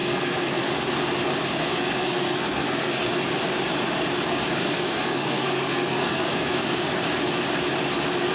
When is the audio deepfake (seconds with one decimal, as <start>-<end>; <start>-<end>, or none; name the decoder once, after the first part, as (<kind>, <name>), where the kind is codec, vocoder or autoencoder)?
0.0-0.6 (codec, SNAC); 1.6-3.1; 4.6-7.0